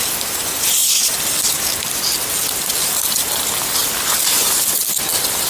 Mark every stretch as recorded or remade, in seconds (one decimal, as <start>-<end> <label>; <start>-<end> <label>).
0.0-5.5 recorded